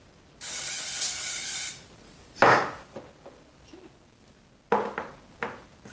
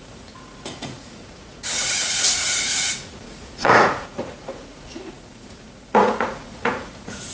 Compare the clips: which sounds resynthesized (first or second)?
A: second